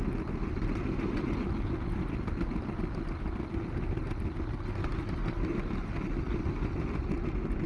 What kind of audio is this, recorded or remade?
recorded